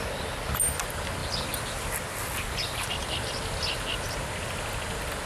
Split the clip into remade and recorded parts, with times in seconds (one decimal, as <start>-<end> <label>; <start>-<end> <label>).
0.0-5.3 recorded